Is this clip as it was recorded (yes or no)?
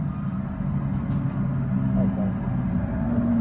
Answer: yes